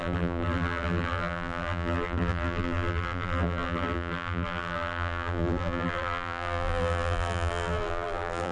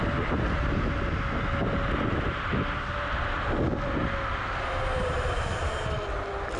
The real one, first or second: second